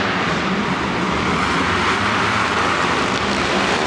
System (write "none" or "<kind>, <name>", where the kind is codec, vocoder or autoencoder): vocoder, BigVGAN v2